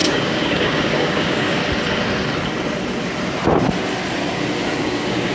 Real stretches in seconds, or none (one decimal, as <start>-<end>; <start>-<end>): 1.6-4.8